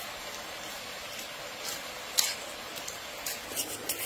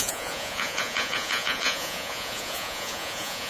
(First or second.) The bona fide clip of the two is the first